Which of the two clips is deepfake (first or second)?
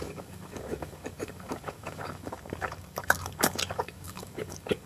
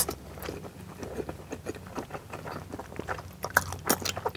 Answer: first